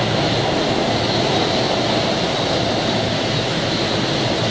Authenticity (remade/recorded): recorded